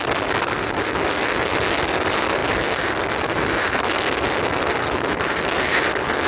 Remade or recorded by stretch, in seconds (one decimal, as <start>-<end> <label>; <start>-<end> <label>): 0.0-6.3 recorded